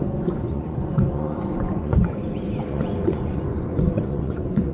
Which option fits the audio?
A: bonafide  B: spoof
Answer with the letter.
B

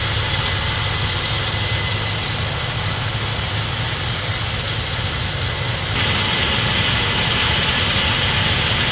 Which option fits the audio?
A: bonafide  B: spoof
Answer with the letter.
A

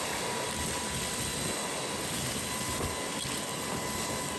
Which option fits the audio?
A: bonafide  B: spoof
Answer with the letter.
A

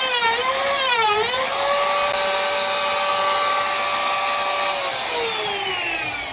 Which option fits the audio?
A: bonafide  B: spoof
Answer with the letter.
A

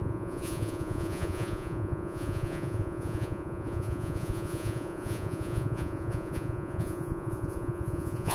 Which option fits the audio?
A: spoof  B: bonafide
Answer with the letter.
A